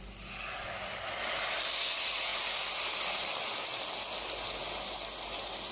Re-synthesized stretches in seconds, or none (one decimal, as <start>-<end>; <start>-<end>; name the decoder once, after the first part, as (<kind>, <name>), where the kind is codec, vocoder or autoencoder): 2.3-3.8 (vocoder, BigVGAN v2)